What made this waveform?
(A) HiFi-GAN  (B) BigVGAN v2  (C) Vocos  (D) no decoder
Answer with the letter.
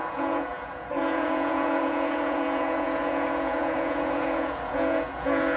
C